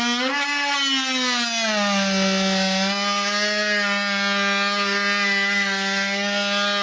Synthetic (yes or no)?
no